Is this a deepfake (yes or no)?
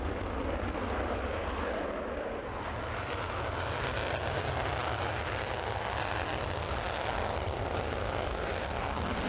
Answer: no